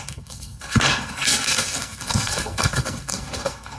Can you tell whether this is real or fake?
fake